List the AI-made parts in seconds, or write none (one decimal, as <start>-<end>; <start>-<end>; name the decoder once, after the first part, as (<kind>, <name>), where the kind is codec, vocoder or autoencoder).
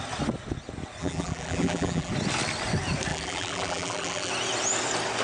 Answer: 1.0-2.1 (vocoder, BigVGAN v2); 3.1-4.3